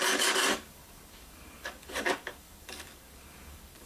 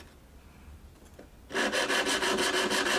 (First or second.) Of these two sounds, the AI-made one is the first